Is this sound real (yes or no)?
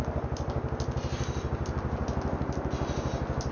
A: yes